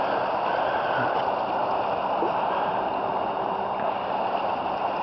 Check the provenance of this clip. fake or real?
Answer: real